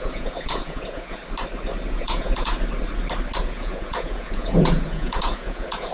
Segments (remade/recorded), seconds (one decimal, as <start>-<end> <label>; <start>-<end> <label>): 0.0-1.2 remade; 1.2-1.9 recorded; 1.9-2.5 remade; 2.5-3.4 recorded; 3.4-5.9 remade